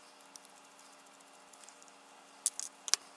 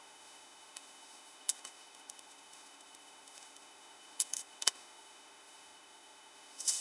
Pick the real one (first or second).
first